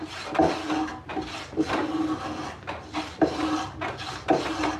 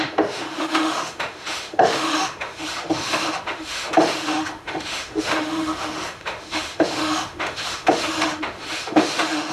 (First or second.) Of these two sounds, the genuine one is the first